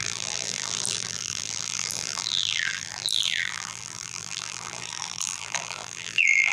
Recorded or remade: remade